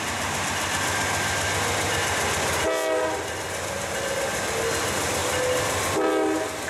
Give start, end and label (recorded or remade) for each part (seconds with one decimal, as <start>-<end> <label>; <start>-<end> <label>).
0.0-5.2 recorded; 5.2-6.1 remade; 6.1-6.7 recorded